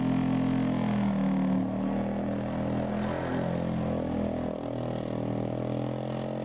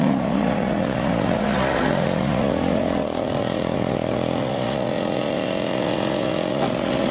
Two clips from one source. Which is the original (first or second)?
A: first